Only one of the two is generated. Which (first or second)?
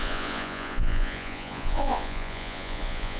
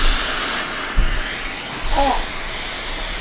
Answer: first